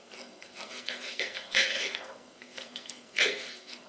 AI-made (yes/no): yes